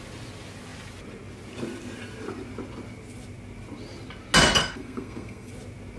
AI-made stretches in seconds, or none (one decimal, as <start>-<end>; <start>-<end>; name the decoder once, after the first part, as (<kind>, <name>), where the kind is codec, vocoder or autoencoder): 4.6-5.5 (codec, SNAC)